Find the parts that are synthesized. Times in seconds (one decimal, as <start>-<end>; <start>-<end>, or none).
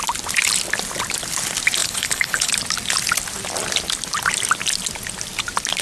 1.8-2.5